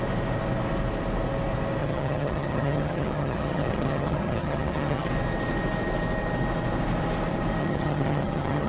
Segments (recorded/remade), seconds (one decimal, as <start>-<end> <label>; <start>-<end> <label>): 0.0-1.8 recorded; 1.8-5.1 remade; 5.1-7.6 recorded; 7.6-8.7 remade